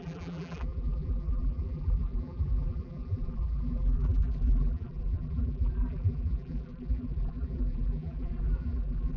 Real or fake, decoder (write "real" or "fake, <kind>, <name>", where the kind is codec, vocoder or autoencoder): fake, vocoder, BigVGAN v2